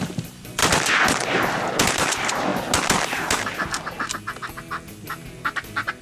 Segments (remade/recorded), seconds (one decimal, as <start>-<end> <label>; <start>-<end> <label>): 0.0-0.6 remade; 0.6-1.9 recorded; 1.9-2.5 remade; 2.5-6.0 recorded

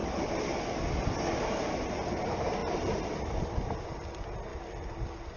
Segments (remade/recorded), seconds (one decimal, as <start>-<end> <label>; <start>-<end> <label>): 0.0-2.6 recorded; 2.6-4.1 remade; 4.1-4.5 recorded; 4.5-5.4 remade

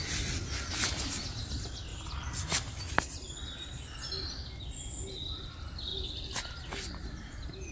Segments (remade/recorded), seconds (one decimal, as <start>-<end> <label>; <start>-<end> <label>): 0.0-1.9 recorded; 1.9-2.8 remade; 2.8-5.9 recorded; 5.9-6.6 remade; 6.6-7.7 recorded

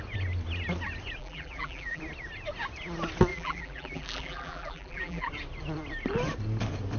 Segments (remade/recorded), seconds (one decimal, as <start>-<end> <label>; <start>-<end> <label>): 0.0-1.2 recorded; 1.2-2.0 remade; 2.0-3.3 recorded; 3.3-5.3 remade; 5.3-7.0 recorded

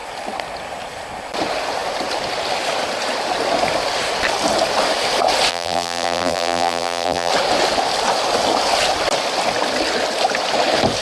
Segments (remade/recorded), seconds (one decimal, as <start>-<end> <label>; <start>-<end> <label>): 0.0-5.5 recorded; 5.5-7.3 remade; 7.3-11.0 recorded

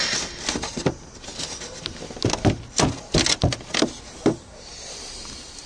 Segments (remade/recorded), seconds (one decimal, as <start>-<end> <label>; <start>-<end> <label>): 0.0-5.7 recorded

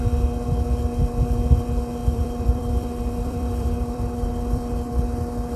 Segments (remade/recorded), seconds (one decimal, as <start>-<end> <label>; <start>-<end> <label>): 0.0-2.0 recorded; 2.0-4.9 remade; 4.9-5.6 recorded

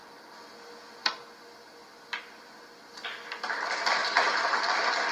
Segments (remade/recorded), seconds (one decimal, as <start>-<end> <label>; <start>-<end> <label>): 0.0-4.0 recorded; 4.0-4.6 remade; 4.6-5.1 recorded